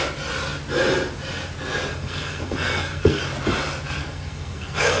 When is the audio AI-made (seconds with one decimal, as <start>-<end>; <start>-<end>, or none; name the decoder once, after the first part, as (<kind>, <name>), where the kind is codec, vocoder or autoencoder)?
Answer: 1.9-3.2 (codec, SNAC); 4.0-5.0